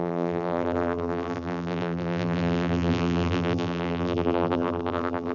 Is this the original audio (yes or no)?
no